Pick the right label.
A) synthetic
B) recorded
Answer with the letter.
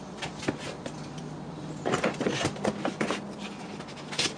B